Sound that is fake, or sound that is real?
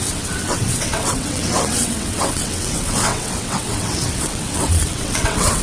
fake